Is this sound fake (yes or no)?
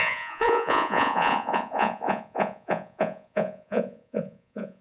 yes